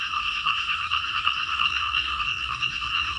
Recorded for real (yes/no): no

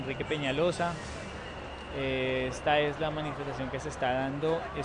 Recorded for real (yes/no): yes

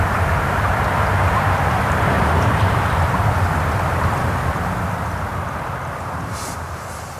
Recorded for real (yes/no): no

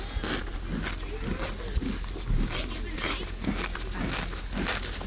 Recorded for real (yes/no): yes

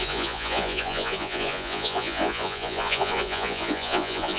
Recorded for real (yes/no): no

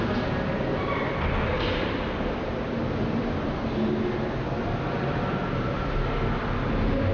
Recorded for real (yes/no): yes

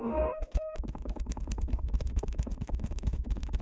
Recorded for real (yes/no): no